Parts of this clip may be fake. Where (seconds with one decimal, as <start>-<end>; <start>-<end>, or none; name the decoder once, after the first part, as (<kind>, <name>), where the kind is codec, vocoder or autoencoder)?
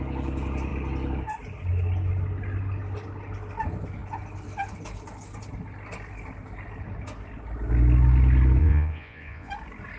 8.6-9.5 (vocoder, Vocos)